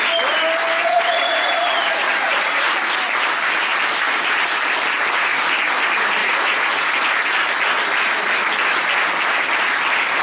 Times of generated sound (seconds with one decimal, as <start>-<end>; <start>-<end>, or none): 0.8-2.7; 6.2-6.9